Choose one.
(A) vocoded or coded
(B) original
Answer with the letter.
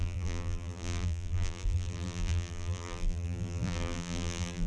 A